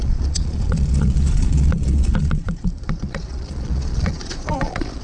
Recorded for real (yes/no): no